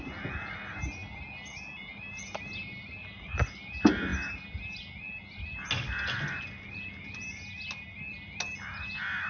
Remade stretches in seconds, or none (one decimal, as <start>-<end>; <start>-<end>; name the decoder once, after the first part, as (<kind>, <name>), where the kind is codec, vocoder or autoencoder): none